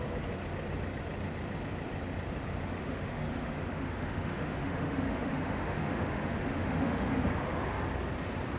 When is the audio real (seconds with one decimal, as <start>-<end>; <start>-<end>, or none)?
0.0-2.8; 7.1-8.6